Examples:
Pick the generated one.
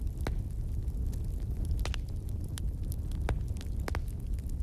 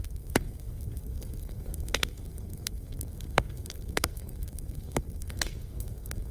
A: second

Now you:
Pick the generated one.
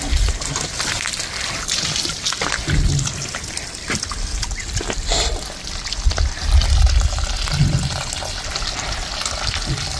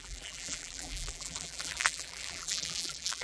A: second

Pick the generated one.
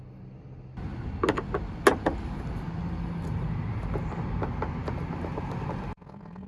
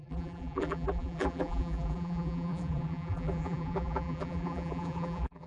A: second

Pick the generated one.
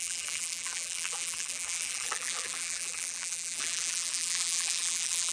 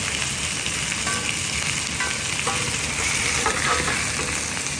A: first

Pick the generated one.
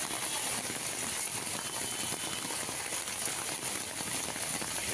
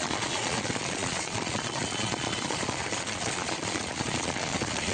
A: second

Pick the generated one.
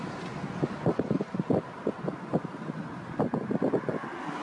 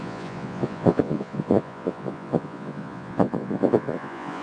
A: second